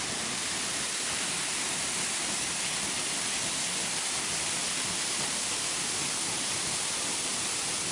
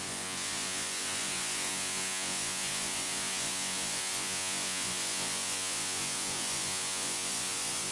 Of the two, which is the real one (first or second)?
first